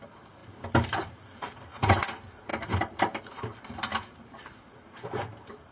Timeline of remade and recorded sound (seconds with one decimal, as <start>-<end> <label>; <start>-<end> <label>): 0.0-5.7 remade